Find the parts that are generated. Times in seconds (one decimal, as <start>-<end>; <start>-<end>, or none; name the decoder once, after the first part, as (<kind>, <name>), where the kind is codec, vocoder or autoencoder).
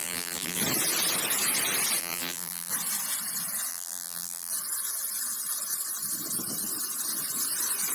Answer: 0.0-0.6 (vocoder, BigVGAN v2); 2.0-2.7; 3.7-4.5